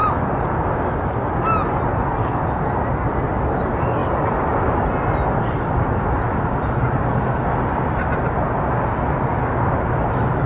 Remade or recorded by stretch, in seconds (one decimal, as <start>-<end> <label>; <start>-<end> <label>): 0.0-10.5 recorded